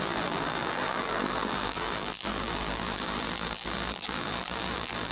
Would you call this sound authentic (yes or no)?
no